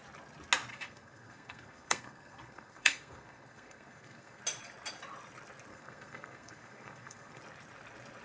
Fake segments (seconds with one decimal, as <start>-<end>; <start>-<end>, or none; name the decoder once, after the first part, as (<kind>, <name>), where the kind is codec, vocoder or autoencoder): 0.7-4.4 (codec, SNAC); 5.7-7.4